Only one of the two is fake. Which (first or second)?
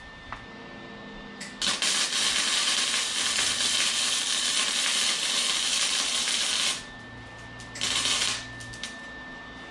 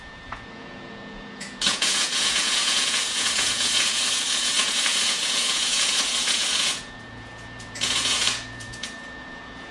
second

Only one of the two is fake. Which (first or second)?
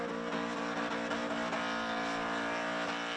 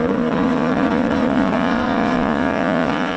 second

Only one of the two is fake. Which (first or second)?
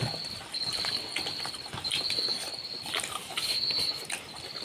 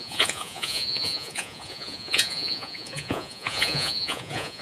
second